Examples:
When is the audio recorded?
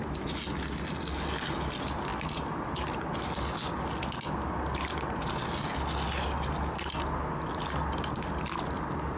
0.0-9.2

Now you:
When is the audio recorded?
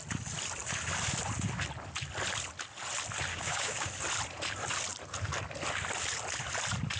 0.0-3.3; 3.9-7.0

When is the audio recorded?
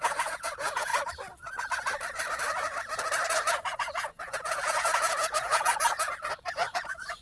0.9-3.5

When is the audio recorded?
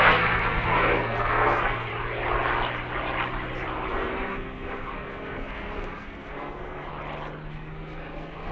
1.9-3.9; 6.9-7.5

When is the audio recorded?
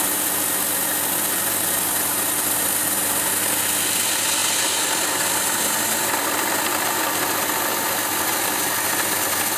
0.0-9.6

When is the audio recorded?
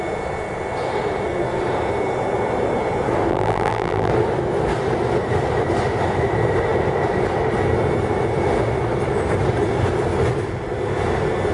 0.0-3.3; 4.1-11.5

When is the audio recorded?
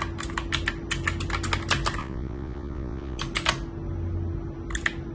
0.0-2.0; 3.2-5.1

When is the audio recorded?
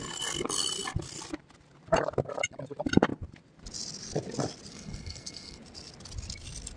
0.0-4.7; 5.6-6.8